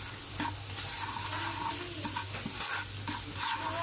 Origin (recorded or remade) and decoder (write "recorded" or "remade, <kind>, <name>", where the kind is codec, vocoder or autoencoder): recorded